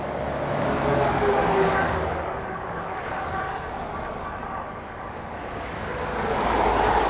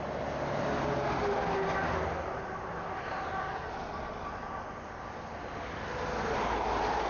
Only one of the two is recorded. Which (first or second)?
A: second